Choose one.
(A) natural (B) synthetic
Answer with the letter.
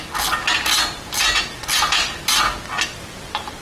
A